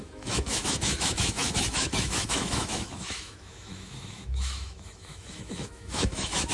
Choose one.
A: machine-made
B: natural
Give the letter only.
A